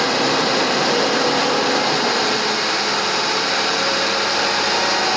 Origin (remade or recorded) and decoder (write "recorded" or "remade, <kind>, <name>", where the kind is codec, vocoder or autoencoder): recorded